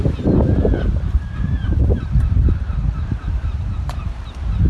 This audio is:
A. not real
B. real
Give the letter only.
A